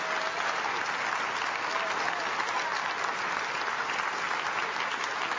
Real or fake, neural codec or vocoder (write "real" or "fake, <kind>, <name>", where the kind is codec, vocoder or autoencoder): real